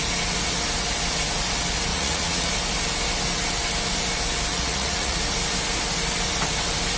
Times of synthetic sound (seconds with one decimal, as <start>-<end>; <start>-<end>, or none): 1.9-2.5; 4.5-5.2